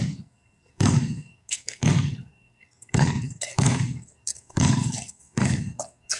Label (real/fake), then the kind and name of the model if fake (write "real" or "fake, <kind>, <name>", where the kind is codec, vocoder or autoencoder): fake, codec, SNAC